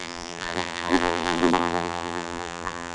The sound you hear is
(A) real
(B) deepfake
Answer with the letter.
B